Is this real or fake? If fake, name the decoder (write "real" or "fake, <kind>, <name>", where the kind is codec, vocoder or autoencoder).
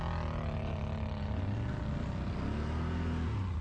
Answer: real